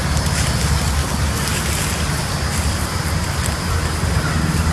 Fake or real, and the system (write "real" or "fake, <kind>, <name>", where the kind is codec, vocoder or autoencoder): real